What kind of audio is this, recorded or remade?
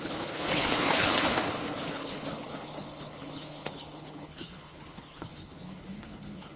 remade